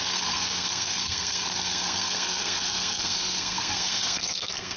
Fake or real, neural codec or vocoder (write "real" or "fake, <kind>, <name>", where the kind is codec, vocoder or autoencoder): fake, codec, SNAC